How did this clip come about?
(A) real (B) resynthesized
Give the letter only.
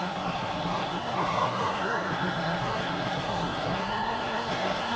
B